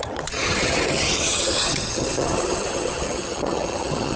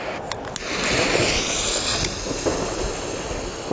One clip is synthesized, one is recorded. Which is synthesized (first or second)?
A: first